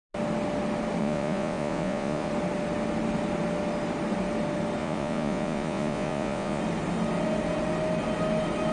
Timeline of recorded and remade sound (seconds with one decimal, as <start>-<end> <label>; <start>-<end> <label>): 0.0-1.0 recorded; 1.0-2.3 remade; 2.3-4.8 recorded; 4.8-6.6 remade; 6.6-8.7 recorded